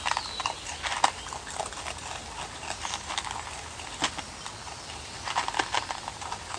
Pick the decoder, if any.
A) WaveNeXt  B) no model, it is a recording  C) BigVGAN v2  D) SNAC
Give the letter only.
B